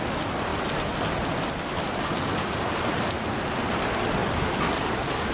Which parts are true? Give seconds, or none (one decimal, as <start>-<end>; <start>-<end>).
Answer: 0.0-5.3